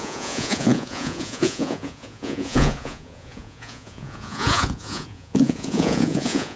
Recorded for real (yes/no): no